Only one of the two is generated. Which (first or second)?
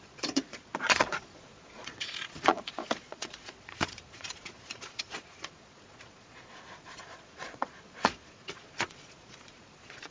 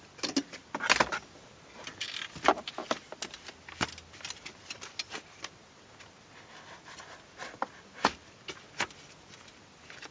first